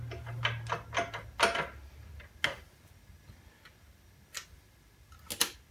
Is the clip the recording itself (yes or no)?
yes